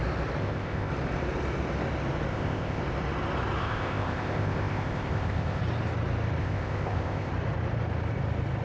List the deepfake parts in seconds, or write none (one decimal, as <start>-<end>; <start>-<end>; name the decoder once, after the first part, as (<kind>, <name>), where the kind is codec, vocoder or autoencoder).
0.4-0.9 (codec, ZipCodec); 2.3-2.8; 3.6-5.6; 6.4-7.3